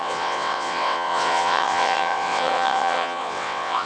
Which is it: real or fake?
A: fake